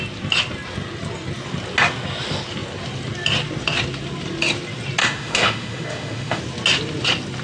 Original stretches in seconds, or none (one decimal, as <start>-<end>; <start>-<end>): 0.0-5.0; 6.4-7.4